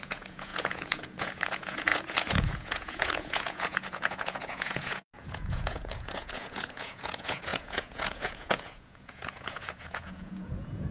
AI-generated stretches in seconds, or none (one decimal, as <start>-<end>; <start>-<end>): 0.0-10.9